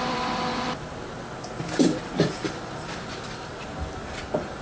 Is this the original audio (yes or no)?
no